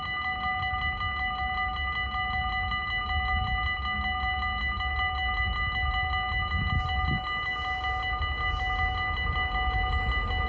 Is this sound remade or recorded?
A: recorded